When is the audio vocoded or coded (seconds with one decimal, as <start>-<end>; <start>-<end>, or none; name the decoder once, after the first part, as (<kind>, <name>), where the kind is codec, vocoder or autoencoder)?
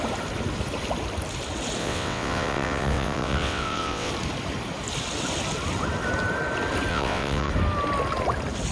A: 1.8-4.1 (vocoder, WaveNeXt); 6.9-7.5